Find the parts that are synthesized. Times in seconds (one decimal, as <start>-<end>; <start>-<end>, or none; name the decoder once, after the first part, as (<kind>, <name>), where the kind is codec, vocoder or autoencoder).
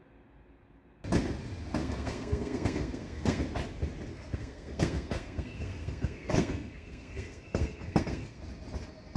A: 1.8-3.4 (codec, SNAC); 4.1-8.4